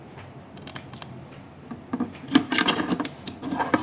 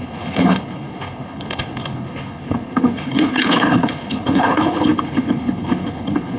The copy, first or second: second